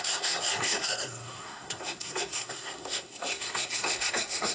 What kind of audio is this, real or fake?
fake